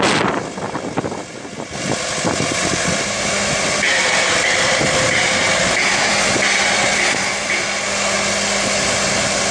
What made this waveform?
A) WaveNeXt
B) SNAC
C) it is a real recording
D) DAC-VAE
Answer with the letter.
C